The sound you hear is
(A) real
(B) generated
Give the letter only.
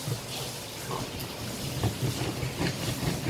A